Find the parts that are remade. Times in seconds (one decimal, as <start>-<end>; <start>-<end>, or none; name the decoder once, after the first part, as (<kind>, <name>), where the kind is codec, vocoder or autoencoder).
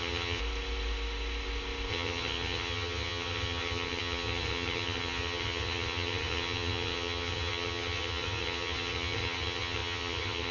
0.0-0.4 (vocoder, HiFi-GAN); 1.9-10.5